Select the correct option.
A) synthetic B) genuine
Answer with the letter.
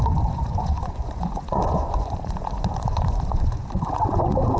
A